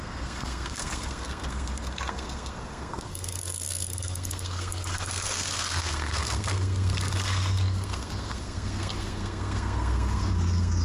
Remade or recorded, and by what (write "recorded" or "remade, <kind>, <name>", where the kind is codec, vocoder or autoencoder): remade, codec, SNAC